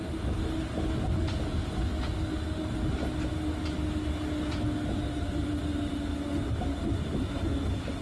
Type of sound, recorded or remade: recorded